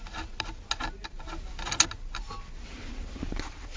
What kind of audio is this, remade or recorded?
recorded